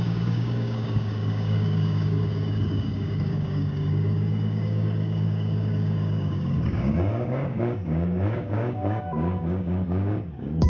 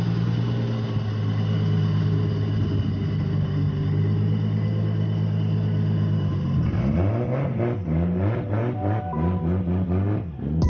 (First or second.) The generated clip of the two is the first